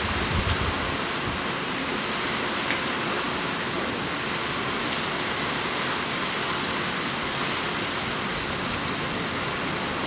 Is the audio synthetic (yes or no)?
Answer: no